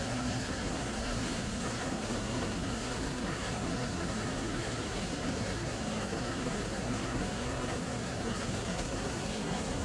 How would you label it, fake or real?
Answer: fake